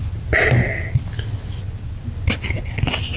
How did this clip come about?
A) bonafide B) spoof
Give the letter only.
A